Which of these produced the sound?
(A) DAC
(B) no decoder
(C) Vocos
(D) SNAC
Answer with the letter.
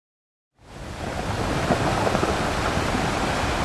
B